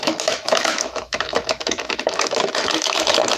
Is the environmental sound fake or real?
fake